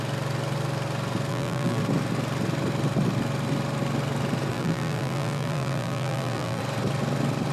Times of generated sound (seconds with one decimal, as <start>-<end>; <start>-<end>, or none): 1.3-1.8; 4.5-6.6